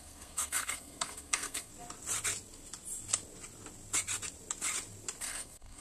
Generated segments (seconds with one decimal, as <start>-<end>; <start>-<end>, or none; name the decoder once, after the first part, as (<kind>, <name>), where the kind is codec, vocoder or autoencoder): 0.0-1.7 (codec, SNAC); 5.2-5.8